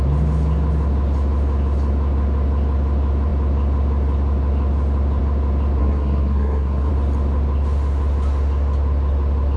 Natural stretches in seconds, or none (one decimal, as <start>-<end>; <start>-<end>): 0.0-5.8; 6.9-9.6